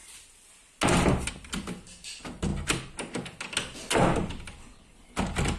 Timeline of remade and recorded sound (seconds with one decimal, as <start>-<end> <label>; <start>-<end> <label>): 0.0-5.6 recorded